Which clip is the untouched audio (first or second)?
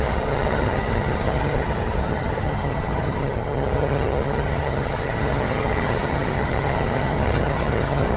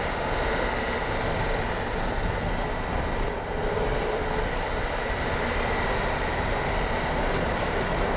second